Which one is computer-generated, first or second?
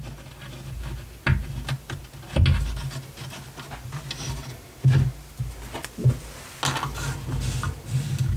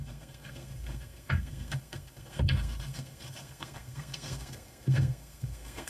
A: second